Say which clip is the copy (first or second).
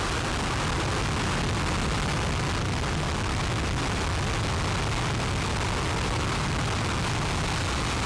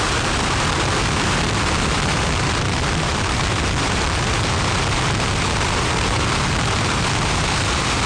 second